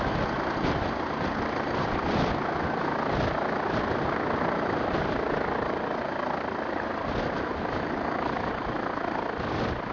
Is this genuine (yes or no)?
yes